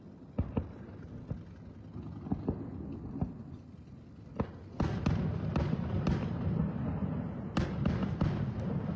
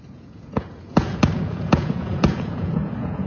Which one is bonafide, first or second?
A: first